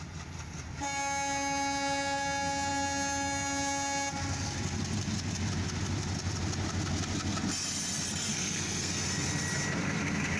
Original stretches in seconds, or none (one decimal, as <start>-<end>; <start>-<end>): 0.0-8.3; 8.9-10.4